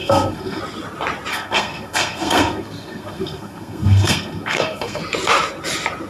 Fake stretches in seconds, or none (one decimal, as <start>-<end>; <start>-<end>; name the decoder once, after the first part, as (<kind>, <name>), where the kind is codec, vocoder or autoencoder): 0.0-0.6 (codec, SNAC); 1.3-5.0